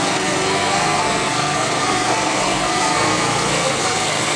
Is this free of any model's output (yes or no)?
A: no